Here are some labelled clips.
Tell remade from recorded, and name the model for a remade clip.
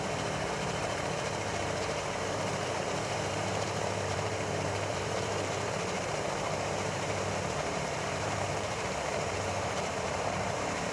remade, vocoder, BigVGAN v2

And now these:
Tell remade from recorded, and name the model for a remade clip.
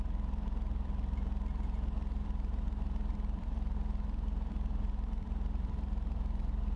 remade, vocoder, BigVGAN v2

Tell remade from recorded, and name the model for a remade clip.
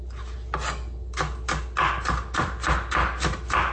recorded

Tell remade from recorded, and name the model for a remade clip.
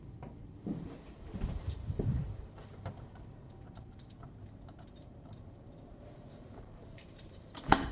remade, vocoder, BigVGAN v2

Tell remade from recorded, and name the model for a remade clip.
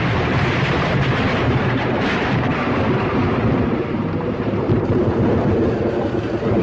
remade, vocoder, BigVGAN v2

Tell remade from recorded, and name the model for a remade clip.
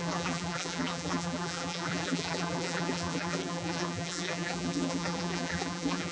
remade, vocoder, BigVGAN v2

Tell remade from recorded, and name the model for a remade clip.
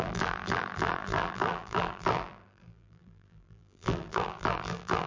remade, vocoder, BigVGAN v2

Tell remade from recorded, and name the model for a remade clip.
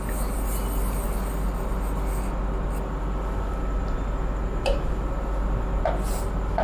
recorded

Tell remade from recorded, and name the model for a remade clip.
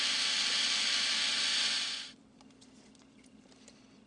remade, vocoder, BigVGAN v2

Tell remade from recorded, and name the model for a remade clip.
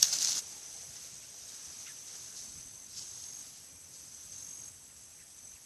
recorded